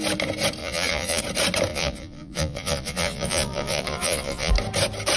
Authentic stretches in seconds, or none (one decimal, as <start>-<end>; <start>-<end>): 0.0-0.6; 1.2-1.7; 4.5-5.2